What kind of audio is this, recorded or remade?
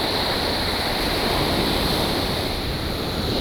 remade